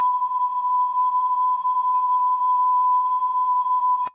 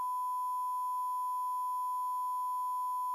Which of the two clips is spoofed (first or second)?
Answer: first